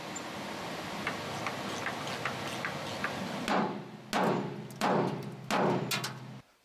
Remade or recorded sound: recorded